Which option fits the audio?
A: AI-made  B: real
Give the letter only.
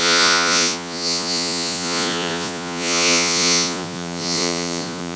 A